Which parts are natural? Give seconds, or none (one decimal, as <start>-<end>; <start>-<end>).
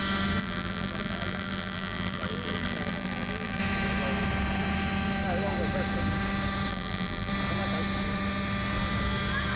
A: 0.0-0.4; 3.6-6.7; 7.3-9.6